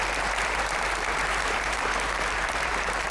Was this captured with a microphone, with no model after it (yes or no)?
no